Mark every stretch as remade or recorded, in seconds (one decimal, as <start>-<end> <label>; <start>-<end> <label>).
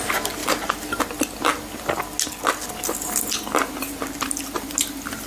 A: 0.0-0.4 recorded; 0.4-1.0 remade; 1.0-5.3 recorded